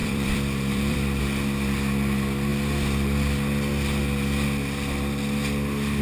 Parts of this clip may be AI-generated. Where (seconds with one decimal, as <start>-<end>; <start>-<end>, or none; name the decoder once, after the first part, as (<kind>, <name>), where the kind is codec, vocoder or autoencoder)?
0.0-1.2 (vocoder, BigVGAN v2)